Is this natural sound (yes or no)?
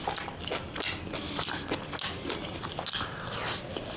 yes